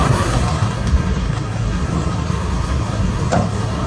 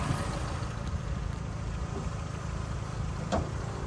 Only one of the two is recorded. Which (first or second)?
second